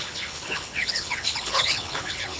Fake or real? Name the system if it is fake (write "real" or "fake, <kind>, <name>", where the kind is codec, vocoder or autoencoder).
fake, codec, HILCodec